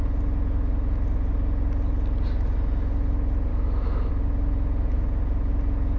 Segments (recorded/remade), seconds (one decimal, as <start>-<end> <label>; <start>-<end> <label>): 0.0-3.5 recorded; 3.5-4.1 remade; 4.1-6.0 recorded